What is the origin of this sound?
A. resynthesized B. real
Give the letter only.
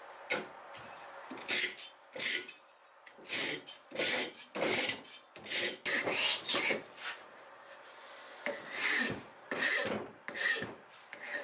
A